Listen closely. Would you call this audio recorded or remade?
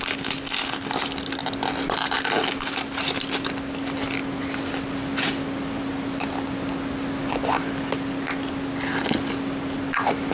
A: recorded